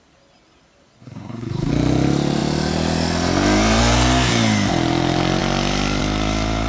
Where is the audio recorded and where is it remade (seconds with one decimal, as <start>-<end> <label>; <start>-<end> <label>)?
0.0-1.0 recorded; 1.0-1.7 remade; 1.7-6.7 recorded